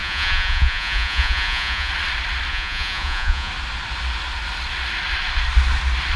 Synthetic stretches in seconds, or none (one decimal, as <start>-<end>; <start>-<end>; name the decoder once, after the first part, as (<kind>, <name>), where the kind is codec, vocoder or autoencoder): 0.0-1.9 (vocoder, Vocos); 2.5-3.5